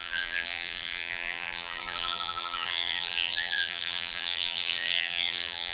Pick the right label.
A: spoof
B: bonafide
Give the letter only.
A